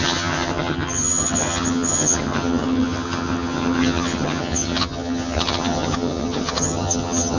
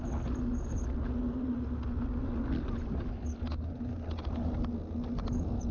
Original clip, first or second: second